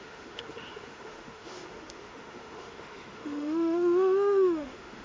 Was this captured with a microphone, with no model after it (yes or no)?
no